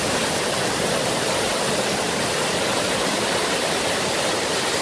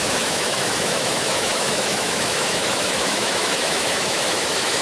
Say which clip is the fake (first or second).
second